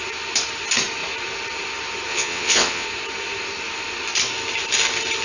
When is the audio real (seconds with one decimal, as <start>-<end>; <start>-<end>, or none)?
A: 0.0-2.1; 2.9-5.2